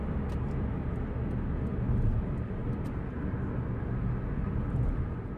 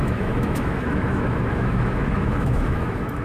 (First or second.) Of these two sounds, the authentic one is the first